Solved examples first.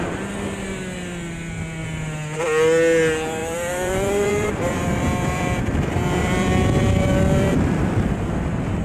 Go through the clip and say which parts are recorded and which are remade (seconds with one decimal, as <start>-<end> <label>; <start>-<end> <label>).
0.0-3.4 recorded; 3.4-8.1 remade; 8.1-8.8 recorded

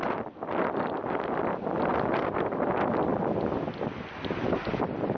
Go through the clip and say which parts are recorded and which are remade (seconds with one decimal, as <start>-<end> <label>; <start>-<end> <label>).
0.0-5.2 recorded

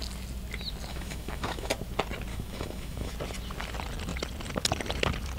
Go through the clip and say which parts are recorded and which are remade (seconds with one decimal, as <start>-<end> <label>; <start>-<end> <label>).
0.0-0.9 recorded; 0.9-1.7 remade; 1.7-2.3 recorded; 2.3-3.1 remade; 3.1-5.4 recorded

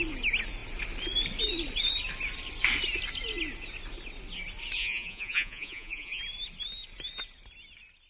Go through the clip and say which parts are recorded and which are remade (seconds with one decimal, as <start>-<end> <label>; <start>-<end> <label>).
0.0-4.8 recorded; 4.8-6.2 remade; 6.2-8.1 recorded

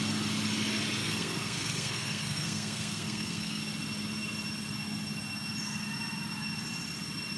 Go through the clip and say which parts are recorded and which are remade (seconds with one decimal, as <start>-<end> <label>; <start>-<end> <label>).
0.0-1.0 recorded; 1.0-3.6 remade; 3.6-7.4 recorded

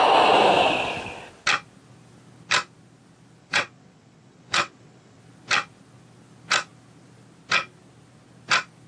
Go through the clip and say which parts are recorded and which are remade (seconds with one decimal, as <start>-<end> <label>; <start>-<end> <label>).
0.0-3.4 recorded; 3.4-5.2 remade; 5.2-8.9 recorded

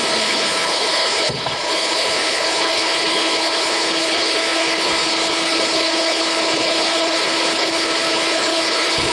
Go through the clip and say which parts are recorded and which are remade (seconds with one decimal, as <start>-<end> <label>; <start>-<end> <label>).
0.0-9.1 remade

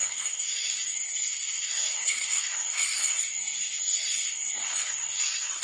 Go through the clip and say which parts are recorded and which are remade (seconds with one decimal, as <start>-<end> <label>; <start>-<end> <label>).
0.0-5.6 remade